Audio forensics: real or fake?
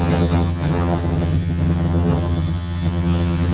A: fake